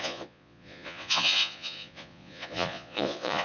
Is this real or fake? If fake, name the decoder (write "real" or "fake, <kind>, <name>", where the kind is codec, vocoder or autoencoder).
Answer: fake, vocoder, Vocos